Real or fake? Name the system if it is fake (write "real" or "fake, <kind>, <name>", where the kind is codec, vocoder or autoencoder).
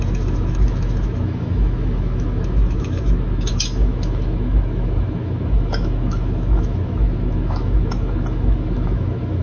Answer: fake, autoencoder, DAC-VAE